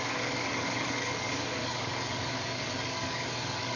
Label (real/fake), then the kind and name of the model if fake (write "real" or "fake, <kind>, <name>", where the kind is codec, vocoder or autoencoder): fake, codec, DAC